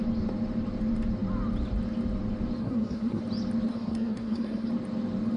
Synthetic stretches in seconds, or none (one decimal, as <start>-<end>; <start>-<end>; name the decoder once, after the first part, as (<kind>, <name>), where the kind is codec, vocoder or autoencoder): 2.6-3.2 (codec, SNAC); 3.7-4.7